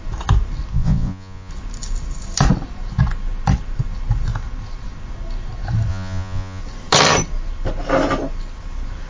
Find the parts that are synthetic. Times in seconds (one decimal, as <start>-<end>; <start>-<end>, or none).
0.7-1.5; 5.9-6.6